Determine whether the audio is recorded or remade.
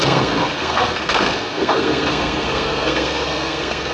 remade